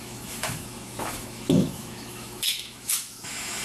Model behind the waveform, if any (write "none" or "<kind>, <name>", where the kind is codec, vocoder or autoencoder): autoencoder, DAC-VAE